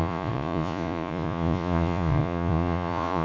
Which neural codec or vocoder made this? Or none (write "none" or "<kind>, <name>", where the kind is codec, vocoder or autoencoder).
vocoder, Vocos